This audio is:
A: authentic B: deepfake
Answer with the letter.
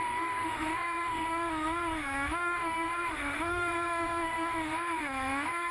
B